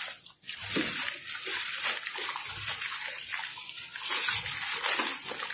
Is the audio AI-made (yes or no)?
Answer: no